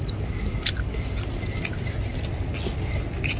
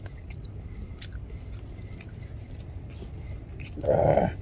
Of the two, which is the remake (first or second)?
second